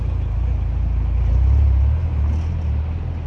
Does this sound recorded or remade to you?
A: recorded